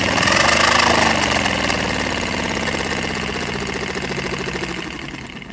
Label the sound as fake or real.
real